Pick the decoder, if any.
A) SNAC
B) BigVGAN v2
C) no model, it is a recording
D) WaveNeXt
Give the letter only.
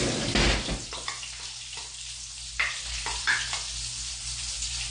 C